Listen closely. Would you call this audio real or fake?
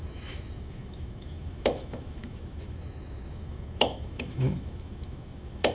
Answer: fake